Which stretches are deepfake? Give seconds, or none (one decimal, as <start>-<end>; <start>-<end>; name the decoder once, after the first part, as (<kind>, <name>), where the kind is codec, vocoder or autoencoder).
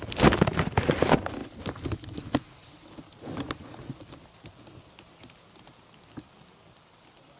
none